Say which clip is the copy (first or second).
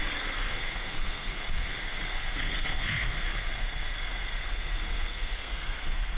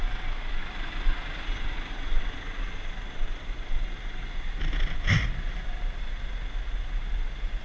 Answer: first